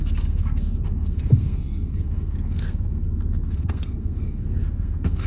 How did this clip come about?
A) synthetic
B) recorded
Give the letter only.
A